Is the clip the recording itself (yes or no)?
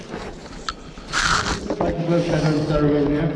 yes